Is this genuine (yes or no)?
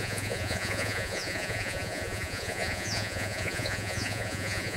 no